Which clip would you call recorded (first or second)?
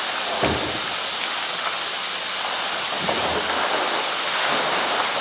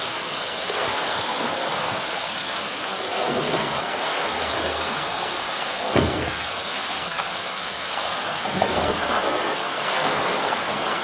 first